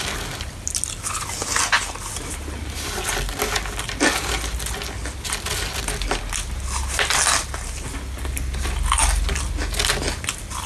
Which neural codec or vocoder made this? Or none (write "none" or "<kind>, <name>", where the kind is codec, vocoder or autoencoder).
none